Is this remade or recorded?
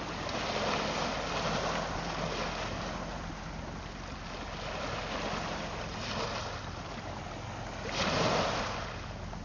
recorded